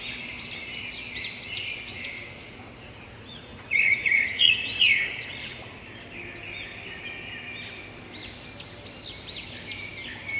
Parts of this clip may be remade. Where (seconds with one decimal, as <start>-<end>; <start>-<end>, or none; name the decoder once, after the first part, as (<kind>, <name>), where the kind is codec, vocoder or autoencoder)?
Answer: 1.9-5.8 (vocoder, Vocos)